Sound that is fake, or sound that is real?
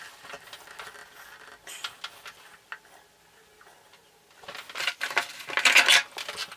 real